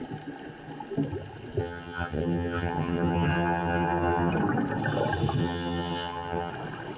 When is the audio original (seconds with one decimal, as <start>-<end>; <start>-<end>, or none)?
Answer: 0.0-1.6; 4.3-5.4; 6.5-7.0